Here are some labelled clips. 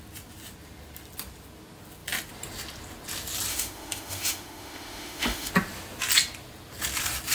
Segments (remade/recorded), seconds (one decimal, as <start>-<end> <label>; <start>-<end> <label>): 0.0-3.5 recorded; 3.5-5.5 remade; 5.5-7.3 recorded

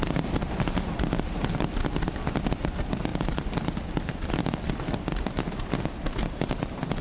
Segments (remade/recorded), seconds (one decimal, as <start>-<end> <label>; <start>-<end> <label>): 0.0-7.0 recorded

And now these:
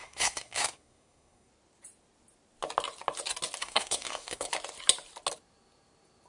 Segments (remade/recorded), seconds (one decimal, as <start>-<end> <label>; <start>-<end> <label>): 0.0-1.5 remade; 1.5-3.6 recorded; 3.6-4.5 remade; 4.5-6.3 recorded